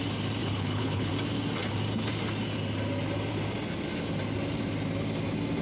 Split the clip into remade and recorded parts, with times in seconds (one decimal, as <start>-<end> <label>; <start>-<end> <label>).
0.0-0.4 recorded; 0.4-1.1 remade; 1.1-5.6 recorded